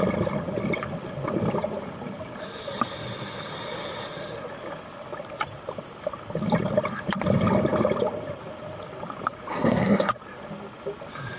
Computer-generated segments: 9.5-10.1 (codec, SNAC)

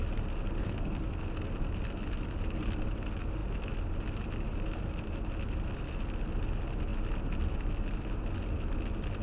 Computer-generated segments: 0.6-1.2 (codec, SNAC)

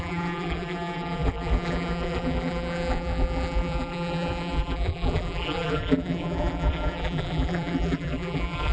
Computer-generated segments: 0.0-8.7 (vocoder, BigVGAN v2)

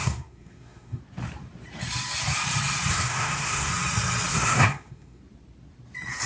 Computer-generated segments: 0.0-1.0 (codec, SNAC); 2.9-3.7; 4.3-5.2

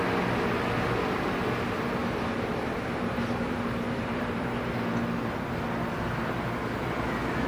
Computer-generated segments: 2.0-4.6 (vocoder, BigVGAN v2)

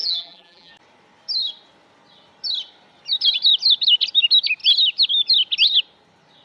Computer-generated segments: 0.0-0.7 (vocoder, BigVGAN v2)

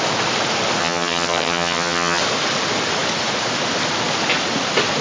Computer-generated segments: 0.8-2.2 (vocoder, HiFi-GAN)